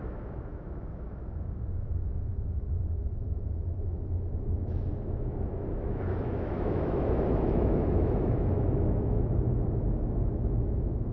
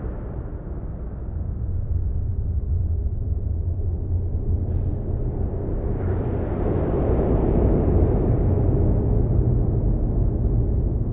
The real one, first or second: second